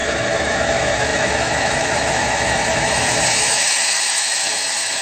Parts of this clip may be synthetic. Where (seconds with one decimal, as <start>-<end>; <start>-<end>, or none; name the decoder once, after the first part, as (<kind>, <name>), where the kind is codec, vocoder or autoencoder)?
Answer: 0.0-5.0 (autoencoder, DAC-VAE)